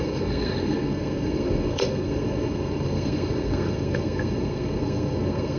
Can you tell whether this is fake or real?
fake